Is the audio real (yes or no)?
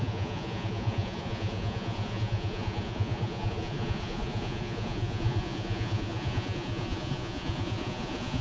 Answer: no